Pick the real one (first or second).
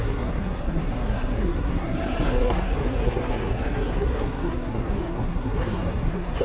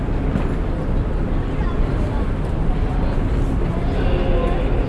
second